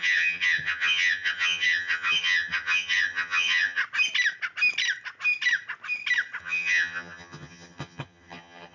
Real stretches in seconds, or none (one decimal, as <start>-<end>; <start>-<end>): 3.8-6.4